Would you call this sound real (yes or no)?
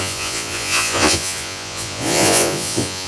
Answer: no